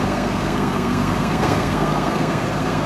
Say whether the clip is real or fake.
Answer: fake